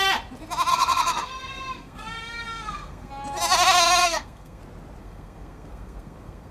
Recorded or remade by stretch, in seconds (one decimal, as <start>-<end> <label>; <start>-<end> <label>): 0.0-0.7 recorded; 0.7-3.1 remade; 3.1-4.0 recorded; 4.0-4.6 remade; 4.6-5.0 recorded; 5.0-6.5 remade